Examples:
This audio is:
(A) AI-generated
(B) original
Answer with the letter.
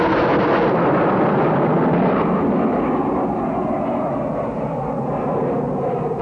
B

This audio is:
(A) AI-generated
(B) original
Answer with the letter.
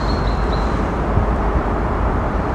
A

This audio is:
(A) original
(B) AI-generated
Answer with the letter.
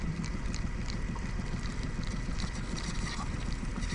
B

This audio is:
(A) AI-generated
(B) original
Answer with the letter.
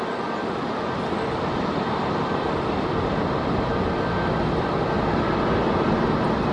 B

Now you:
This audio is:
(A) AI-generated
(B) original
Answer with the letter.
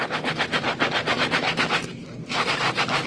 B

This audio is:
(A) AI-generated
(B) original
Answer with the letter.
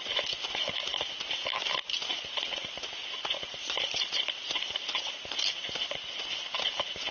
B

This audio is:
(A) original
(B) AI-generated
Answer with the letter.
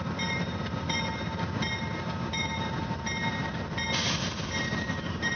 B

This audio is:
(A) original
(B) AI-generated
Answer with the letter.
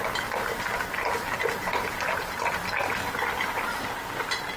A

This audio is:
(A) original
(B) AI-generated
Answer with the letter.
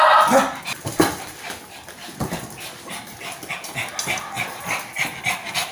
A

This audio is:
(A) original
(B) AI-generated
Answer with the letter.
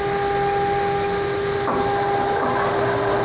A